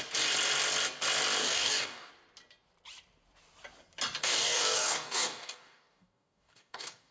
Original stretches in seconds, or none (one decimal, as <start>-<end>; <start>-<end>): 0.0-1.4; 2.1-4.2